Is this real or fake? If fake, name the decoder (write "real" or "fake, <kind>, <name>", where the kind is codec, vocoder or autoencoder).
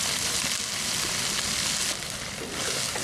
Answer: real